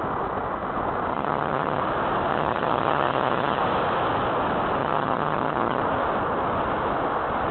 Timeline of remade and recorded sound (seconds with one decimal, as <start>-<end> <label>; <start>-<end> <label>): 0.0-1.1 recorded; 1.1-1.8 remade; 1.8-2.3 recorded; 2.3-3.6 remade; 3.6-4.8 recorded; 4.8-5.8 remade; 5.8-7.5 recorded